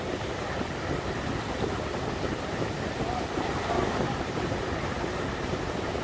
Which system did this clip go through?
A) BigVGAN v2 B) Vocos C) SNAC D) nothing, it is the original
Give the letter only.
A